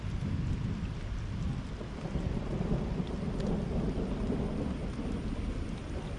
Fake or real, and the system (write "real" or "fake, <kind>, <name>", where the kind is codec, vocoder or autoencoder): real